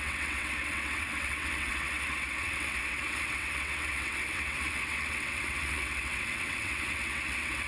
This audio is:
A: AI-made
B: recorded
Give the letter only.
A